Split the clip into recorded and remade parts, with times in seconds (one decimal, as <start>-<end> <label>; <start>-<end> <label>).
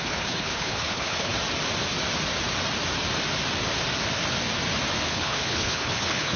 0.0-1.3 remade; 1.3-5.1 recorded; 5.1-6.4 remade